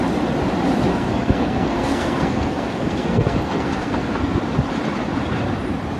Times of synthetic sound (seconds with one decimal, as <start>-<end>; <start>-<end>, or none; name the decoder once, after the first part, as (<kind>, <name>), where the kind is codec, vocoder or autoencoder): 0.9-4.4 (codec, SNAC)